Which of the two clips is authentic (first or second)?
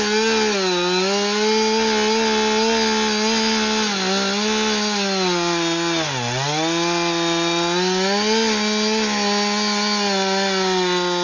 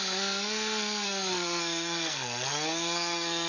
first